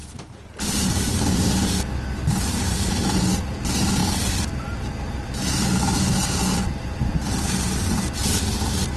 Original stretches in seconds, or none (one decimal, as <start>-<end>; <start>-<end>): 0.0-9.0